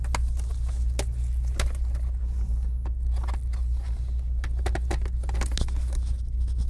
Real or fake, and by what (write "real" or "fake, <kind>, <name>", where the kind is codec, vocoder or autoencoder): real